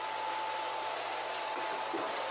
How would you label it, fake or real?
real